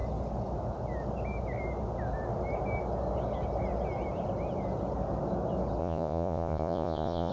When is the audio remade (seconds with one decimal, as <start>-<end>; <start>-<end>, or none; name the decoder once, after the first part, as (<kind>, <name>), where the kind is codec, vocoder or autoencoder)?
5.8-7.3 (vocoder, Vocos)